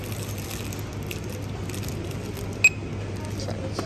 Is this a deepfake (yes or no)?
no